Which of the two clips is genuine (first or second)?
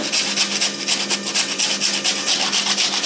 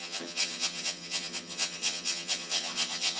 first